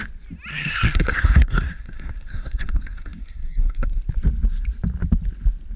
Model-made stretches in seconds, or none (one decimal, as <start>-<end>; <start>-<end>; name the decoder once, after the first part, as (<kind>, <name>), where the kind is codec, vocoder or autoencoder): 0.5-4.0 (codec, SNAC)